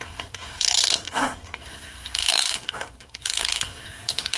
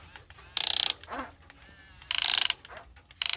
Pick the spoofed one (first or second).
first